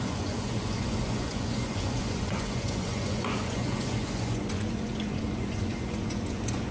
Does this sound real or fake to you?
fake